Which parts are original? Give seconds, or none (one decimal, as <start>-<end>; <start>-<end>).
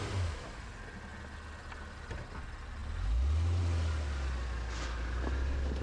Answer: 0.0-5.8